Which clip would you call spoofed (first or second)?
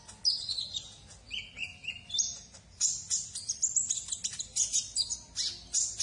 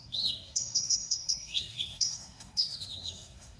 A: second